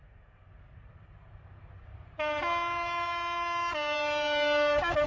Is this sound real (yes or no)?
no